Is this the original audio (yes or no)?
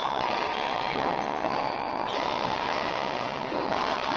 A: no